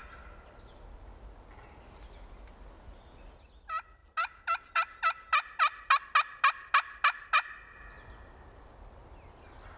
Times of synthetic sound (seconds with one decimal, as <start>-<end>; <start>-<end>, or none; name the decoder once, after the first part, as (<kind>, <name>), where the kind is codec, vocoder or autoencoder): none